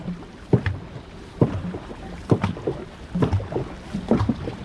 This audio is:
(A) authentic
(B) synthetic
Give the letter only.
B